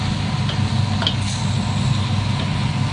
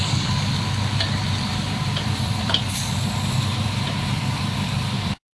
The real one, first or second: first